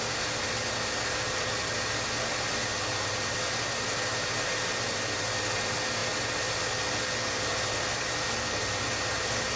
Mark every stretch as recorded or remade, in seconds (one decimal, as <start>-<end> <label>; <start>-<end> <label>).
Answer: 0.0-9.6 recorded